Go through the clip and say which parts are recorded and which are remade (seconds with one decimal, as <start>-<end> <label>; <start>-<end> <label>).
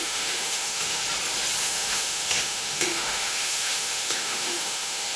0.0-1.0 remade; 1.0-1.6 recorded; 1.6-5.2 remade